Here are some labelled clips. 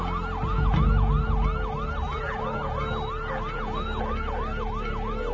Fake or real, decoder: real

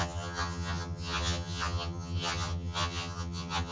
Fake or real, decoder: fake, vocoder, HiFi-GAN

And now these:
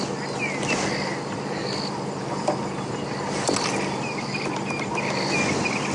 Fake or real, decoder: real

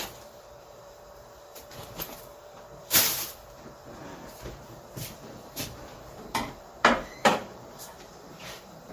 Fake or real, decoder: fake, vocoder, BigVGAN v2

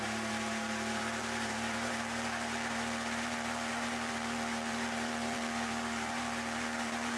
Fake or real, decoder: fake, vocoder, BigVGAN v2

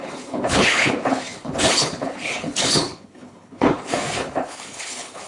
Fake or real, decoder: fake, codec, HILCodec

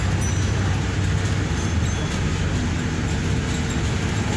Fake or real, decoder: real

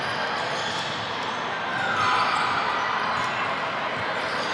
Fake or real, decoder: real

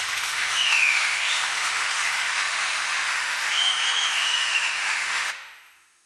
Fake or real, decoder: fake, autoencoder, DAC-VAE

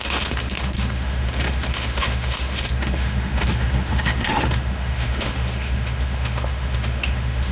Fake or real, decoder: fake, autoencoder, DAC-VAE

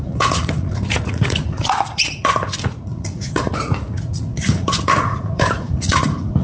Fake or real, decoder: fake, vocoder, Vocos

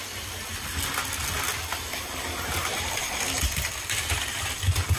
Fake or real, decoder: real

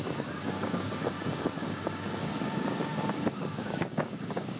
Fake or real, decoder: fake, codec, DAC